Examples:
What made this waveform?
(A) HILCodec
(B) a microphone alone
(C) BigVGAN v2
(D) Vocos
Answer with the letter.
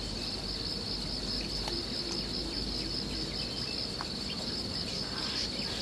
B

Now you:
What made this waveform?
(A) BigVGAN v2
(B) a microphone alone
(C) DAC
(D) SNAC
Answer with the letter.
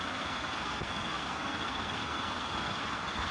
D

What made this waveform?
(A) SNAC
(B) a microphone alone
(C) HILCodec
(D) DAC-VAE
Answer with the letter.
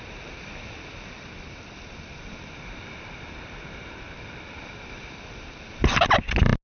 B